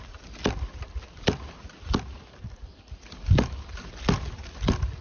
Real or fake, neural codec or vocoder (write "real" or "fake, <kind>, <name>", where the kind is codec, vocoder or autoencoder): real